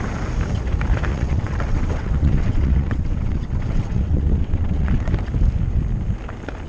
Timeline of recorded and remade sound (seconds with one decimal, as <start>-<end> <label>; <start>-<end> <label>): 0.0-1.1 recorded; 1.1-5.1 remade; 5.1-6.7 recorded